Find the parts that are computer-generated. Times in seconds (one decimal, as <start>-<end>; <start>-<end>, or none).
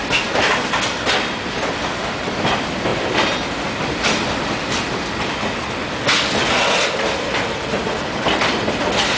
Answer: none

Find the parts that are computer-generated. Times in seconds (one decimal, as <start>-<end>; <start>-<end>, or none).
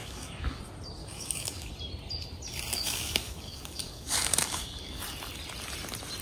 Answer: 0.0-0.6; 1.0-1.7; 2.7-5.0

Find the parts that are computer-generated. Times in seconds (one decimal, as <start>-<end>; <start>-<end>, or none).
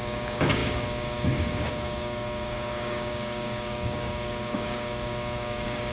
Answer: 0.0-5.9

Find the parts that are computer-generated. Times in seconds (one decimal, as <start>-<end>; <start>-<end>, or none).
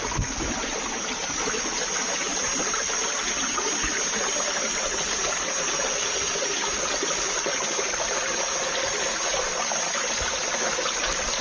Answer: none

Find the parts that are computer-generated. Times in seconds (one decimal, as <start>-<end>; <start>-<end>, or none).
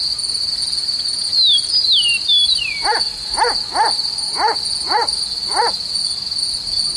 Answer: none